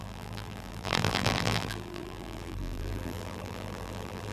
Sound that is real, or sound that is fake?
fake